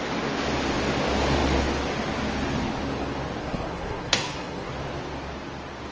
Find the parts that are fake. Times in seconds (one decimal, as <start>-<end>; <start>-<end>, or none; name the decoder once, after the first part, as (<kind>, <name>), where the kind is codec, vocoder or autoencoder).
3.4-4.7 (codec, SNAC)